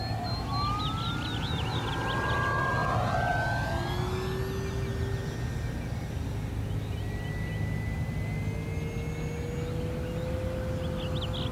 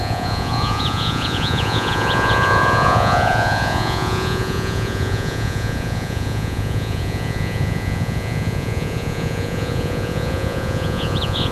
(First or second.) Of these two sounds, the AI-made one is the second